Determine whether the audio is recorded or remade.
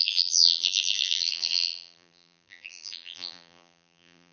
remade